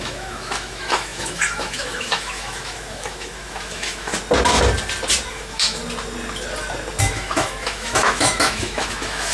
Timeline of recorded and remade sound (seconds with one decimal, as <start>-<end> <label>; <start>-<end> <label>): 0.0-4.1 remade; 4.1-5.3 recorded; 5.3-5.8 remade; 5.8-7.0 recorded; 7.0-9.3 remade